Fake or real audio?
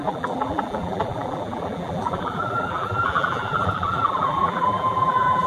fake